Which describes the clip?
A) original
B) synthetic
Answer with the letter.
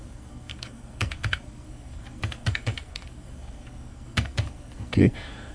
B